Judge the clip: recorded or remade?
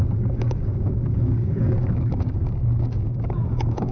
remade